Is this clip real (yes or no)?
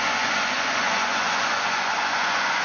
no